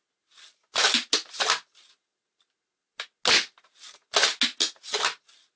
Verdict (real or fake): real